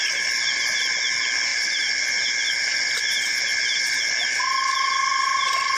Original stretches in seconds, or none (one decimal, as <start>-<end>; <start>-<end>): 0.0-1.5; 2.1-5.8